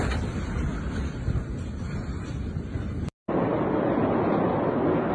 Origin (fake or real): real